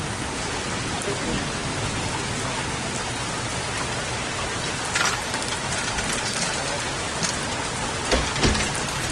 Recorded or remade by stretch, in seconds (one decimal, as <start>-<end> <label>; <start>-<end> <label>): 0.0-9.1 recorded